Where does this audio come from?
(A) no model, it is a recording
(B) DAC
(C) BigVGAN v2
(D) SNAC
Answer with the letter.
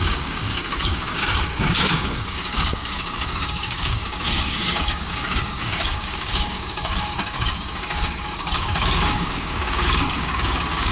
B